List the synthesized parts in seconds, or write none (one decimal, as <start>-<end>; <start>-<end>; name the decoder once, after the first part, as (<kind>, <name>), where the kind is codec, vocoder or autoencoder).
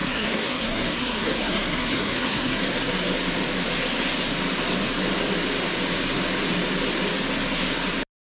0.0-2.6 (codec, SNAC)